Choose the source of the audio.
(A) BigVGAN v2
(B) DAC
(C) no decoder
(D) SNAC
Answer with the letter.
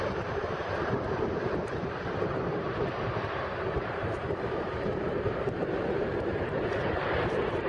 A